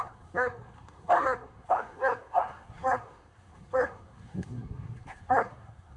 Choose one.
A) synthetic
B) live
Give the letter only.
A